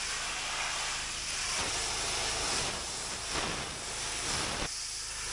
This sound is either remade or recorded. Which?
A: remade